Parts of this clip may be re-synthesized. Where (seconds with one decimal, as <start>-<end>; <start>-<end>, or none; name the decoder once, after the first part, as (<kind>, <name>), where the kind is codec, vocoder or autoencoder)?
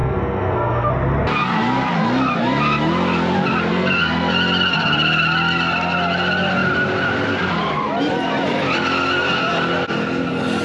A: 0.0-0.9 (codec, SNAC); 3.7-4.3